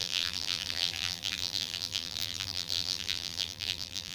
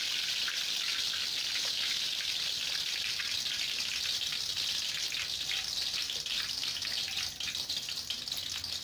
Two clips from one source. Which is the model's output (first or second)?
first